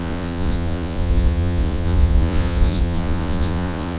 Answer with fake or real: fake